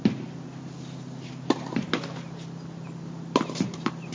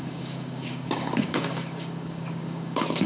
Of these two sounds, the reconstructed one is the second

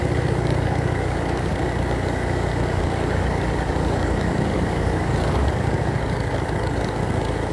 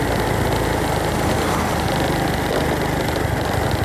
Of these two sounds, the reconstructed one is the first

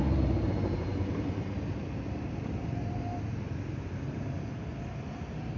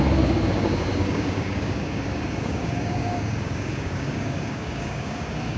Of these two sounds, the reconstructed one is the second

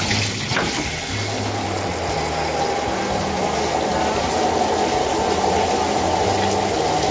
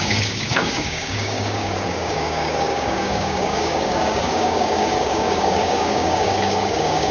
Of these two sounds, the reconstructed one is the second